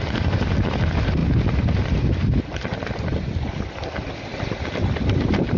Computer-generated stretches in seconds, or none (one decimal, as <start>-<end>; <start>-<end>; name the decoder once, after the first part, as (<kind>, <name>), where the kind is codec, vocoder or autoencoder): none